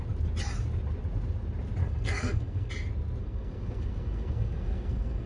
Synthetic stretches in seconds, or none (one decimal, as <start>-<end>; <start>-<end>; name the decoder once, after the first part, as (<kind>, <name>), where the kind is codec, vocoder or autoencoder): 1.8-2.7 (codec, SNAC); 3.2-5.3